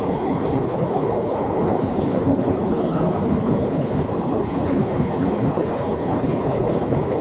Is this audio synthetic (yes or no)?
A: yes